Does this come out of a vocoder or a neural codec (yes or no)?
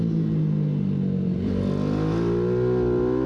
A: no